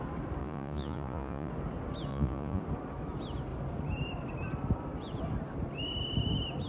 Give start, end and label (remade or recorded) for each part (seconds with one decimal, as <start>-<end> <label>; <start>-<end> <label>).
0.0-0.4 recorded; 0.4-1.5 remade; 1.5-2.1 recorded; 2.1-2.6 remade; 2.6-6.7 recorded

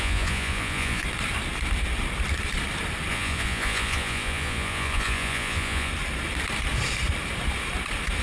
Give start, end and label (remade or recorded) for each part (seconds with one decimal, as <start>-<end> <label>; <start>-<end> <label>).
0.0-1.0 remade; 1.0-3.1 recorded; 3.1-5.9 remade; 5.9-8.2 recorded

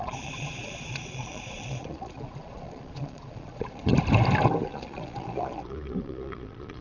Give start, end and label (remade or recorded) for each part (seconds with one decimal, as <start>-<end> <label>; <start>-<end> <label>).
0.0-3.9 remade; 3.9-4.6 recorded; 4.6-6.8 remade

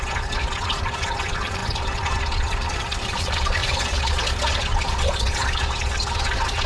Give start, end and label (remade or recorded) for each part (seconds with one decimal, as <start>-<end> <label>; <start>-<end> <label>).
0.0-6.7 remade

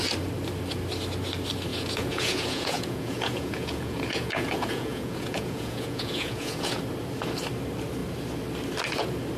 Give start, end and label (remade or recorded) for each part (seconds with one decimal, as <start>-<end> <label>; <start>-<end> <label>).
0.0-1.7 recorded; 1.7-6.8 remade; 6.8-9.4 recorded